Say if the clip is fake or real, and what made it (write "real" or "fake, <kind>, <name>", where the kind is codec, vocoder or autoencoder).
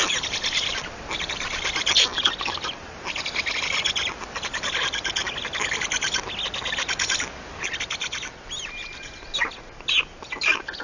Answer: real